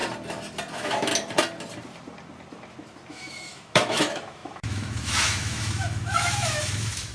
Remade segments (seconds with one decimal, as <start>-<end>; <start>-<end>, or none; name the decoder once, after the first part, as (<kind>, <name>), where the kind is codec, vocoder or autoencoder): 0.7-1.1 (autoencoder, DAC-VAE); 3.1-7.1